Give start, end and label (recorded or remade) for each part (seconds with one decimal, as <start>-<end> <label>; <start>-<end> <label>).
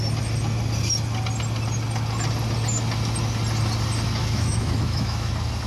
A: 0.0-4.2 recorded; 4.2-5.3 remade; 5.3-5.7 recorded